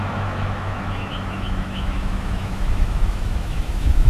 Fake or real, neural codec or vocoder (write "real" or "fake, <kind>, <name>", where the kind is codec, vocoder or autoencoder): fake, autoencoder, DAC-VAE